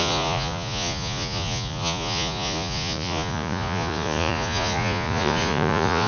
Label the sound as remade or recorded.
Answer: remade